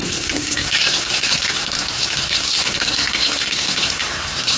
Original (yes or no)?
no